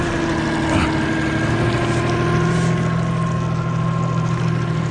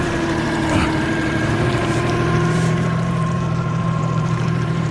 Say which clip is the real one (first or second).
first